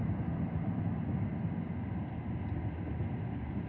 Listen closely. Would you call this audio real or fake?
real